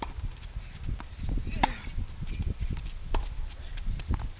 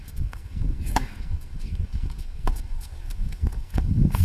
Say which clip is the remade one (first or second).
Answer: second